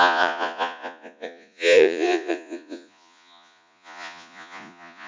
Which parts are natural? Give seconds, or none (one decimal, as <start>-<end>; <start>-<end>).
none